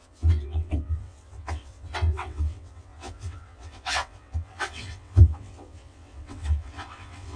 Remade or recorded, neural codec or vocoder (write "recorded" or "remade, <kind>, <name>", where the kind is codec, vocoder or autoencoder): remade, vocoder, WaveNeXt